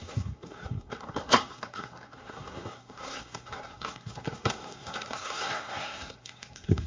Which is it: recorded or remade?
remade